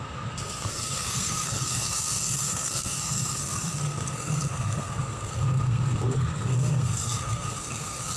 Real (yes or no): no